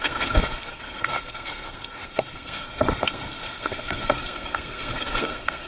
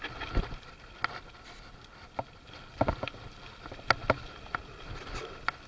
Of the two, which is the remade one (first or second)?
first